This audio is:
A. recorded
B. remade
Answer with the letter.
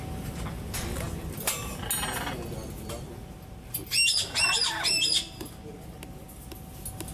A